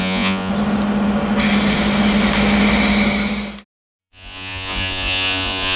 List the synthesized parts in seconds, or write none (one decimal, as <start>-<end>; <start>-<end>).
0.0-0.5; 4.0-5.8